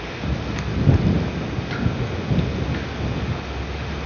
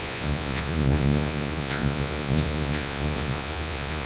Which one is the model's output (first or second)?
second